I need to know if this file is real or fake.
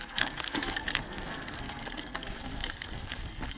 fake